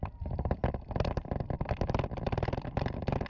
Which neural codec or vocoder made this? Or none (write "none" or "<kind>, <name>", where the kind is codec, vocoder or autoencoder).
none